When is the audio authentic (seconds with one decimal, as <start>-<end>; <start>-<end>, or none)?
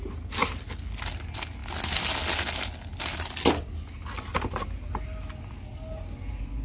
0.0-6.6